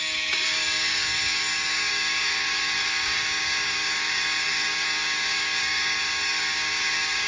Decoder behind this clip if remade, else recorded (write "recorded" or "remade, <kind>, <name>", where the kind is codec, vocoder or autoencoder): remade, codec, DAC